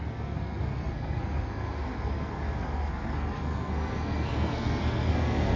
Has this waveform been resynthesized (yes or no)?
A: yes